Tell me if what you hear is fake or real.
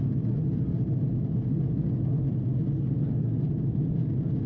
real